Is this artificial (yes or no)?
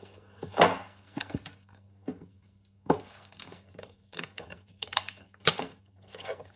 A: yes